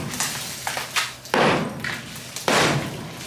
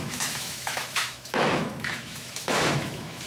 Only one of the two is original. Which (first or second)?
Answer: first